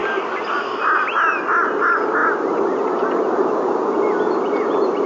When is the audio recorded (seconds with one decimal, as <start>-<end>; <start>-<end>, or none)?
0.0-5.1

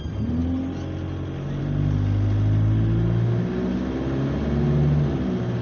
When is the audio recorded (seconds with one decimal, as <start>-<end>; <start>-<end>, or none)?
0.0-5.6

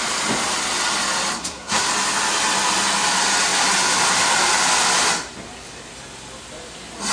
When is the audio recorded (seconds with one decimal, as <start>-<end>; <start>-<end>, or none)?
0.0-1.4; 1.9-7.1

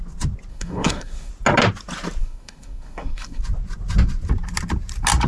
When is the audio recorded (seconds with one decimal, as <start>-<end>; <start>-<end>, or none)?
0.0-0.5; 1.3-2.2; 3.4-5.3

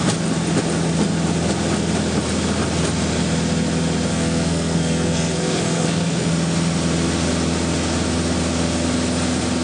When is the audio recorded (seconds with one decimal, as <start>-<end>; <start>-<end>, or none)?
0.0-4.1; 6.3-9.6

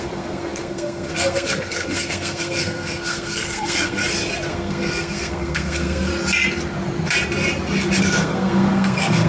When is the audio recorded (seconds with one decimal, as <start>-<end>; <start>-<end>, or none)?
4.0-4.5; 6.1-8.0

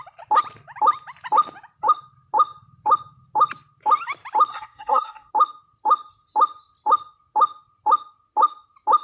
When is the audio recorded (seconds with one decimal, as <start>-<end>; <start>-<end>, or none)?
0.0-4.5; 5.3-9.0

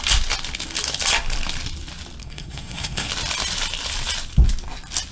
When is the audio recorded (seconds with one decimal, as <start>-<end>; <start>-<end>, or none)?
0.0-2.2; 3.1-5.1